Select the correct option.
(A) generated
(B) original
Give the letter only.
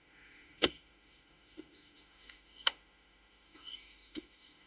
A